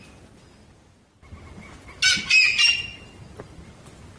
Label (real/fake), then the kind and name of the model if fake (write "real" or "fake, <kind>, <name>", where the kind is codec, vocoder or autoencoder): real